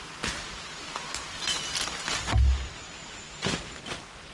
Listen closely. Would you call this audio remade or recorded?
recorded